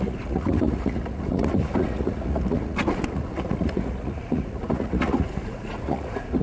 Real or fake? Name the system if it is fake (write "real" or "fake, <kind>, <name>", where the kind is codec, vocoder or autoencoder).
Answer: fake, vocoder, Vocos